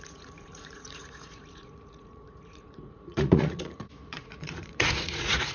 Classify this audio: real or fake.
fake